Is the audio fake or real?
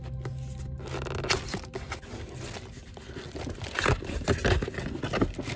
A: real